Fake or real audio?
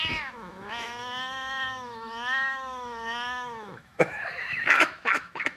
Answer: fake